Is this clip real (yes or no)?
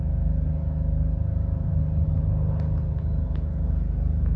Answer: yes